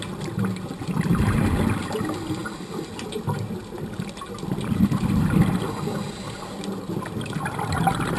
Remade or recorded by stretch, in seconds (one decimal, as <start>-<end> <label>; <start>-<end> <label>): 0.0-8.2 recorded